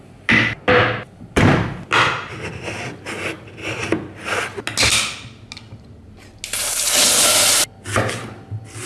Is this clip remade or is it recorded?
recorded